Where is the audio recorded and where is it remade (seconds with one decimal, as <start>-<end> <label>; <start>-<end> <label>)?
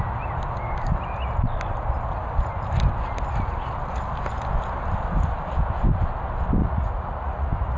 0.0-6.6 recorded; 6.6-7.8 remade